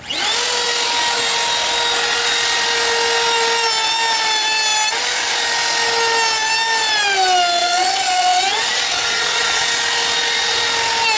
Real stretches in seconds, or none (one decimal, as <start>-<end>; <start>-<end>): 0.0-7.6; 9.7-11.2